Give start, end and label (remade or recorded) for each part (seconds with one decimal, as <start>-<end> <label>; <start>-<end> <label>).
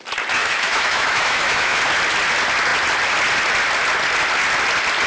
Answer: 0.0-0.4 recorded; 0.4-1.8 remade; 1.8-5.1 recorded